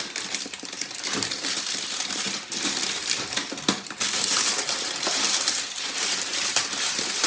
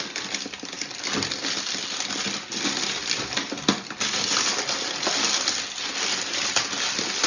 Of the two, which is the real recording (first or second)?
second